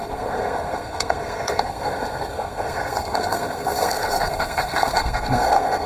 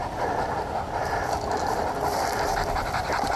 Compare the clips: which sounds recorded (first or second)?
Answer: second